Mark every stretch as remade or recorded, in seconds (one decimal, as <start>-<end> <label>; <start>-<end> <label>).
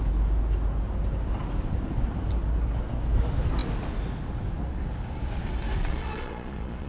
0.0-5.8 recorded; 5.8-6.9 remade